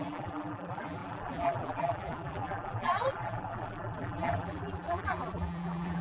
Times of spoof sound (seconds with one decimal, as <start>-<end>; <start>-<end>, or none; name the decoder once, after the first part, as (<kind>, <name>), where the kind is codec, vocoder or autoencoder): 0.0-6.0 (vocoder, BigVGAN v2)